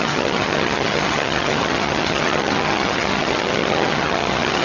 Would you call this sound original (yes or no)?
no